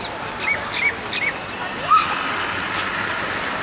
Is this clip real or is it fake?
real